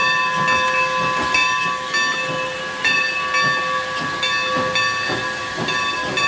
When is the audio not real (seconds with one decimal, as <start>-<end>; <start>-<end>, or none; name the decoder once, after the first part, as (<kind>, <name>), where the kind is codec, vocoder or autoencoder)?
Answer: none